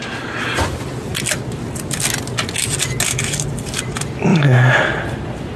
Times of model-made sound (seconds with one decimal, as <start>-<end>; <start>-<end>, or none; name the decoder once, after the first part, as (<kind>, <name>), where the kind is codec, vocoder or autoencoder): 4.3-4.8 (autoencoder, DAC-VAE)